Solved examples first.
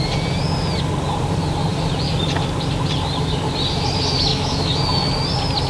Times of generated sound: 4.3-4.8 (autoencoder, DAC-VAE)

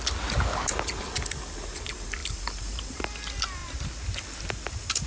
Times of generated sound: 2.2-3.0 (vocoder, BigVGAN v2)

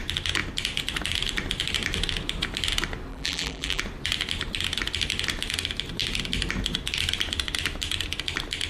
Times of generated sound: 3.1-3.8 (vocoder, BigVGAN v2)

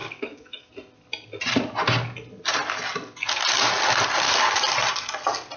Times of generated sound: 0.0-0.7 (autoencoder, DAC-VAE)

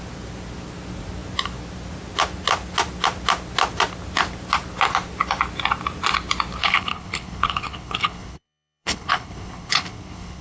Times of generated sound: 6.6-10.4 (codec, HILCodec)

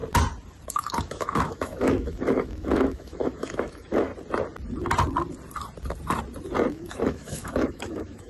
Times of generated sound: 0.7-4.1 (autoencoder, DAC-VAE); 6.7-8.3

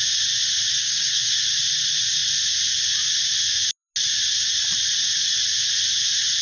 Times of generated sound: 0.8-1.3 (codec, SNAC)